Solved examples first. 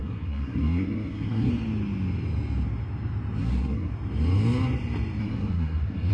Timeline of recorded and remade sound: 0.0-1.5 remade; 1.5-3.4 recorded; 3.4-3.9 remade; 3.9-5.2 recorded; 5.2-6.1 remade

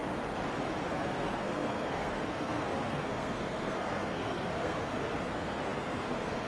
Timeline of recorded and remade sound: 0.0-0.9 recorded; 0.9-6.5 remade

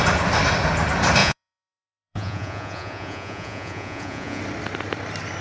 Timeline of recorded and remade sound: 0.0-1.2 recorded; 1.2-4.4 remade; 4.4-5.4 recorded

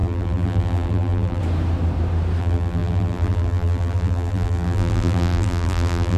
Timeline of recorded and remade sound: 0.0-1.4 remade; 1.4-2.4 recorded; 2.4-6.2 remade

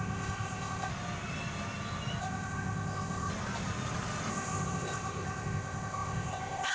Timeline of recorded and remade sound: 0.0-0.9 remade; 0.9-2.2 recorded; 2.2-3.3 remade; 3.3-4.3 recorded; 4.3-6.7 remade